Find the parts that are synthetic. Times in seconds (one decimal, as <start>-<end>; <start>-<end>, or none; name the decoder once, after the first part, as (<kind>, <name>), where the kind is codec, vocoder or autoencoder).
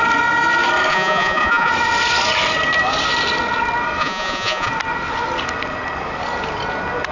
0.9-1.7 (vocoder, Vocos); 4.0-4.7